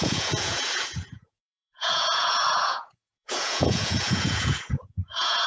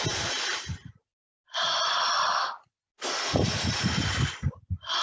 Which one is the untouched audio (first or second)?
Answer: second